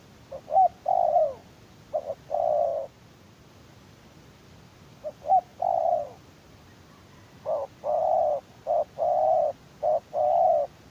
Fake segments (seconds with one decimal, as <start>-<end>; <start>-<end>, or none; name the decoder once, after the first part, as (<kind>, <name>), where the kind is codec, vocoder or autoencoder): none